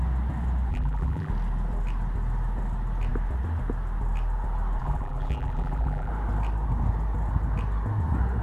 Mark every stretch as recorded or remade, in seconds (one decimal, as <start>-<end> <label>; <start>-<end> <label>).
0.0-0.7 recorded; 0.7-1.3 remade; 1.3-4.8 recorded; 4.8-6.1 remade; 6.1-8.4 recorded